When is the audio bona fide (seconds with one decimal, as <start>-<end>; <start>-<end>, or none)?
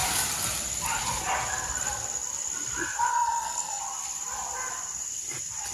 0.0-3.1; 3.8-5.7